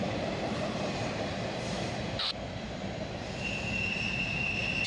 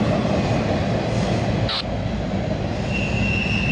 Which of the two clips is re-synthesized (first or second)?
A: first